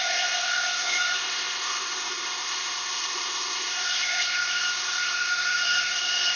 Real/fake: fake